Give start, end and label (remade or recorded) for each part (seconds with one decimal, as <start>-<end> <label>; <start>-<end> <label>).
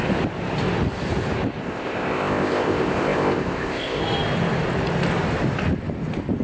0.0-1.6 recorded; 1.6-4.0 remade; 4.0-6.4 recorded